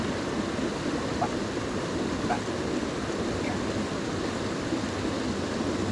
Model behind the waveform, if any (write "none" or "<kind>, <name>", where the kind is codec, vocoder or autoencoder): none